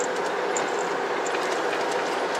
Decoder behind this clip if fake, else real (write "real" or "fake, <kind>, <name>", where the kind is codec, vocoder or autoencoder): real